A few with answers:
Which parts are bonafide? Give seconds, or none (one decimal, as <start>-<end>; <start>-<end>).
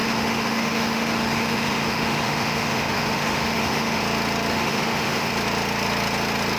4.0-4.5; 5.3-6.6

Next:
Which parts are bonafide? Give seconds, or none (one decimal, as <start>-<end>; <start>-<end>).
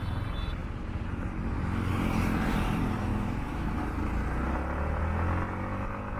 0.0-3.1; 3.8-6.2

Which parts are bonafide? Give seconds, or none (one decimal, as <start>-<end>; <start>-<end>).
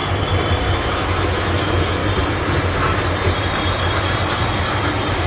0.0-0.7; 2.0-5.3